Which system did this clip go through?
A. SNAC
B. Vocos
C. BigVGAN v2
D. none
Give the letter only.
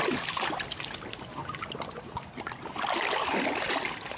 D